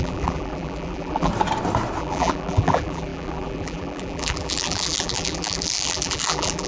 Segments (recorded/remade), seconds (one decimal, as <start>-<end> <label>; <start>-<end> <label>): 0.0-1.3 remade; 1.3-2.0 recorded; 2.0-6.7 remade